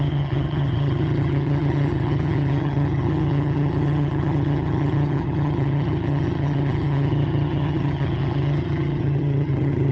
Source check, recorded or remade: remade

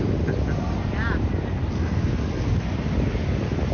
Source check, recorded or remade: recorded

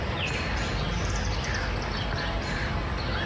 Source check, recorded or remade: recorded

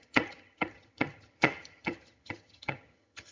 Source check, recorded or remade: remade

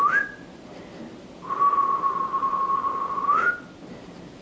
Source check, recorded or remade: recorded